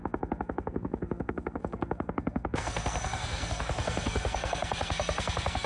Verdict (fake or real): fake